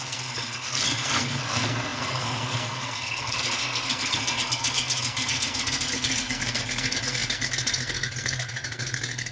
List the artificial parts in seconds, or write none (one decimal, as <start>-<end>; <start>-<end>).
0.0-9.3